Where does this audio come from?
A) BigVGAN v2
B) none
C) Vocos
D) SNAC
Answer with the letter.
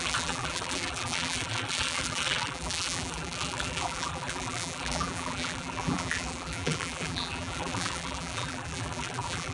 A